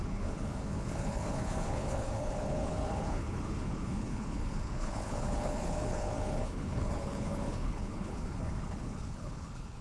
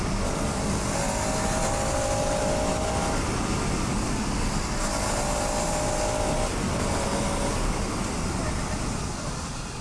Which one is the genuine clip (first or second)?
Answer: second